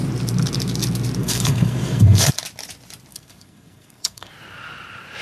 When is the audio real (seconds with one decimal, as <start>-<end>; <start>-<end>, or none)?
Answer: 0.0-1.2; 2.3-3.1; 4.3-5.2